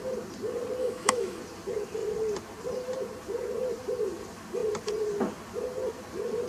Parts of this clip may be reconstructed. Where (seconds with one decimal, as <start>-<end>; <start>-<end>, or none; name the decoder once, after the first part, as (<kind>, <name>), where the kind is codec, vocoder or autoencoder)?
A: 0.8-1.4 (autoencoder, DAC-VAE)